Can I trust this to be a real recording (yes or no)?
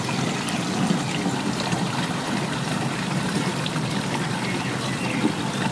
yes